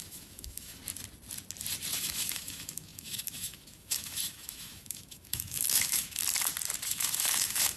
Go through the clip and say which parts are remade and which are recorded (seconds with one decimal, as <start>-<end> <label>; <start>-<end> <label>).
0.0-0.8 remade; 0.8-2.0 recorded; 2.0-6.2 remade; 6.2-6.9 recorded; 6.9-7.8 remade